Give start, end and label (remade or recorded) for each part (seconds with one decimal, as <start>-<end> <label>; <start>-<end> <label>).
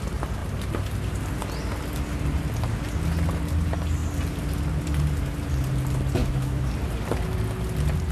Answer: 0.0-6.2 recorded; 6.2-6.7 remade; 6.7-8.1 recorded